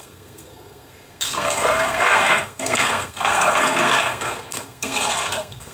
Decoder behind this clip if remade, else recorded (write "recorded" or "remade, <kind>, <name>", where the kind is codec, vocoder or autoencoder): remade, codec, SNAC